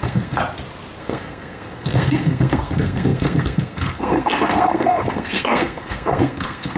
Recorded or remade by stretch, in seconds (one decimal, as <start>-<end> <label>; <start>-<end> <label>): 0.0-0.4 remade; 0.4-1.0 recorded; 1.0-6.8 remade